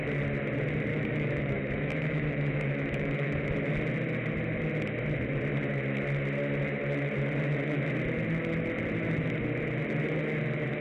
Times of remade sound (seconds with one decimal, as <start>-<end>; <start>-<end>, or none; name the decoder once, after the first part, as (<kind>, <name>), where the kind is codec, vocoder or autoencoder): 0.9-3.7 (autoencoder, DAC-VAE)